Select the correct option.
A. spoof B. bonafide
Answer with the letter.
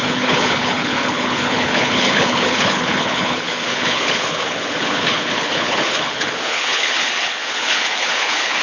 A